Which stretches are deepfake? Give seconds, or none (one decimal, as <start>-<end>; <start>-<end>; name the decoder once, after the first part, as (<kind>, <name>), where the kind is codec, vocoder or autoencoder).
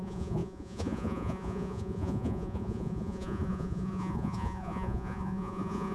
0.0-5.9 (vocoder, Vocos)